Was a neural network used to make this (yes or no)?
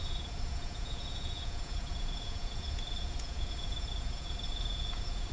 yes